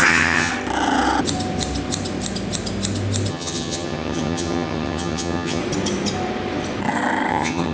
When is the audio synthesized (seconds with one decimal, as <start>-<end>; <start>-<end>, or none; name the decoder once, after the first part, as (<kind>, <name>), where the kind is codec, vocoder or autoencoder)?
0.0-0.5 (vocoder, HiFi-GAN); 3.3-5.6; 7.3-7.7